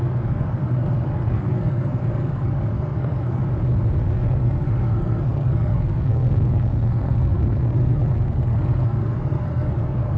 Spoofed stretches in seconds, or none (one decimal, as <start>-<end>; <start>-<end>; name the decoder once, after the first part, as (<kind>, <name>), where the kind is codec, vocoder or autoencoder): 0.0-3.4 (codec, SNAC); 4.0-10.2